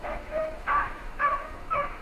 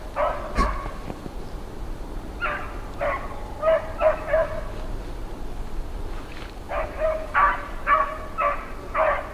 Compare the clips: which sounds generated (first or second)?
first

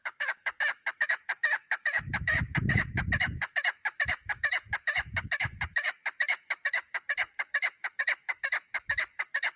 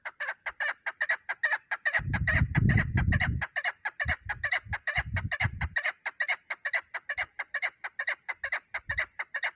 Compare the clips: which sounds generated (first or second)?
first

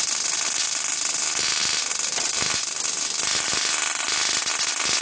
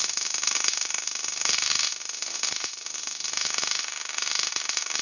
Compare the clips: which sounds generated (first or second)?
second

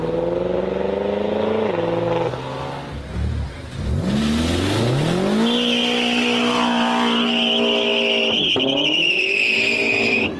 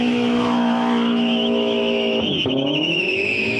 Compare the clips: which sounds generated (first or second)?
second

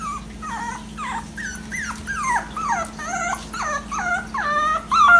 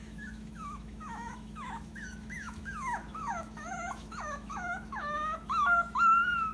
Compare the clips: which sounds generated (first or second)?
second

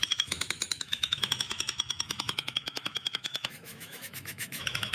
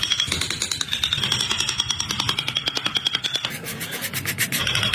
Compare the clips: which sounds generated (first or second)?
first